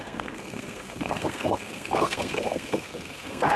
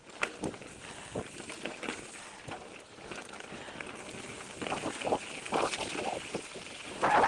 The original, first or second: second